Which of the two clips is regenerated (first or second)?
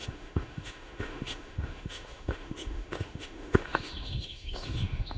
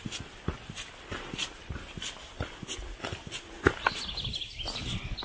first